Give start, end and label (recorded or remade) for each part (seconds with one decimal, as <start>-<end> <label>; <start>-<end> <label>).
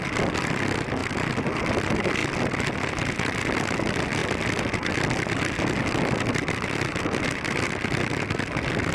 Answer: 0.0-8.9 recorded